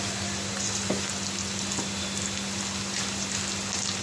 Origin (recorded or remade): recorded